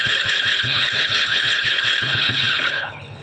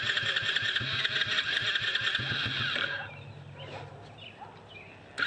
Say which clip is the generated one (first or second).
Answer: first